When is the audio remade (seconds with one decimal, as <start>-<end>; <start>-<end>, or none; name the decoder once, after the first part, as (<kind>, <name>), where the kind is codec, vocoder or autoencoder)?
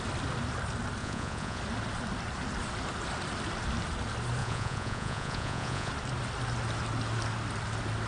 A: 1.0-1.6 (vocoder, Vocos); 4.4-5.9